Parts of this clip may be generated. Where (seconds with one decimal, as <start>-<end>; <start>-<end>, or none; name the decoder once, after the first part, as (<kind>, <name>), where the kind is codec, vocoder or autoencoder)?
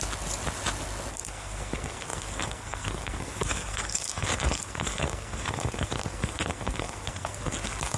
1.1-8.0 (codec, SNAC)